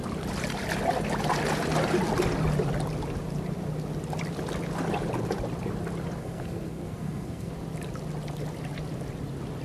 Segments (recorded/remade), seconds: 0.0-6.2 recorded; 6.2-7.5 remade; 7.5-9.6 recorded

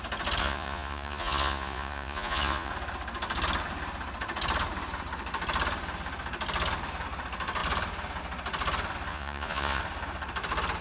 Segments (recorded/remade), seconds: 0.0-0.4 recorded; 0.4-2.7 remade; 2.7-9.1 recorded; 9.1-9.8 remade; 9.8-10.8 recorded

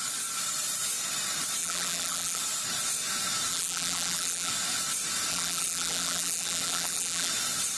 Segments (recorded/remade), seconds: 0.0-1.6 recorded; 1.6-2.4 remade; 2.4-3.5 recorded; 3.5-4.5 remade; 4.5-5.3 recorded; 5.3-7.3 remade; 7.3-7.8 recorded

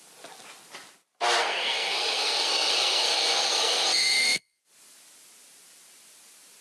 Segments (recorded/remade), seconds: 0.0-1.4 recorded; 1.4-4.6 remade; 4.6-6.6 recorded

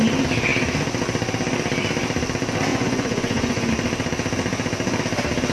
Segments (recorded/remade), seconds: 0.0-2.7 recorded; 2.7-3.7 remade; 3.7-5.5 recorded